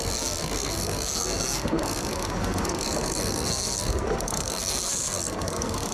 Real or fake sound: fake